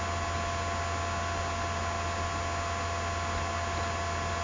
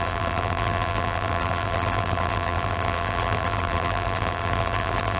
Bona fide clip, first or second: first